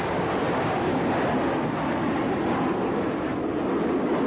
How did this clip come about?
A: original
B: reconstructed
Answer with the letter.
A